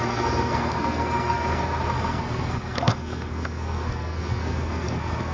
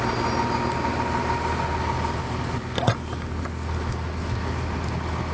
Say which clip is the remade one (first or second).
first